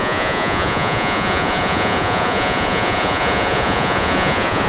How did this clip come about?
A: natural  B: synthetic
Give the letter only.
B